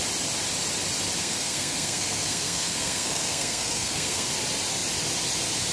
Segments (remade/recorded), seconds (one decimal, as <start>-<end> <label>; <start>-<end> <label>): 0.0-1.2 recorded; 1.2-4.3 remade; 4.3-5.7 recorded